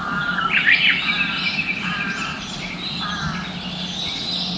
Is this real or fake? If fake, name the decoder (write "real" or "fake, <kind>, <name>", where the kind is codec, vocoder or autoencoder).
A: real